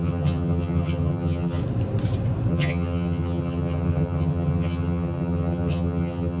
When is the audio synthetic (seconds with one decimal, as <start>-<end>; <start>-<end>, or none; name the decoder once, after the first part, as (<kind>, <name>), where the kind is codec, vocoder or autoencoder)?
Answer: 0.0-1.6 (vocoder, HiFi-GAN); 2.5-6.4